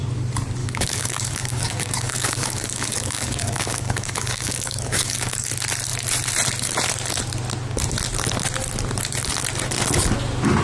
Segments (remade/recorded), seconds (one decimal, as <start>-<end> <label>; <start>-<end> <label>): 0.0-0.6 recorded; 0.6-5.5 remade; 5.5-10.6 recorded